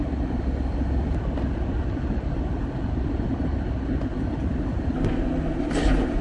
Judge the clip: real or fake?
real